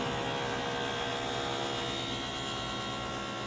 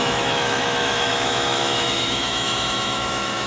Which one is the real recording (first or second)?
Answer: first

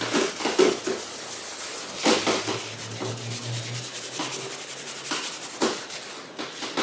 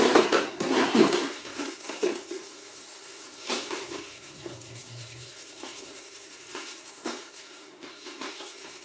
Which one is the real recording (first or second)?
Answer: first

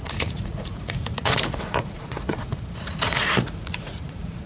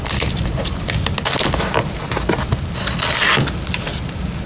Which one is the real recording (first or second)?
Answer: second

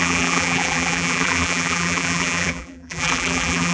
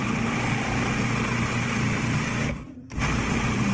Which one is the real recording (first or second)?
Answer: second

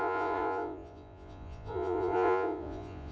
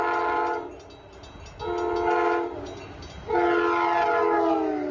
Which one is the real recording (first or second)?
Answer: second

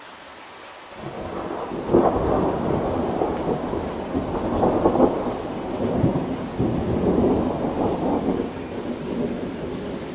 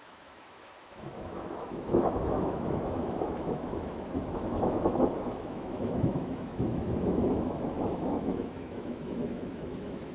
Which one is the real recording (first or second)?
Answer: first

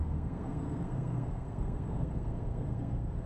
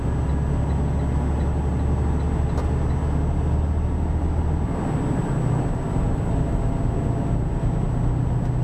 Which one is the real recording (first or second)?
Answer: second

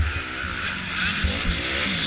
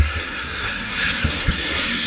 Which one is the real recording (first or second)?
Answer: first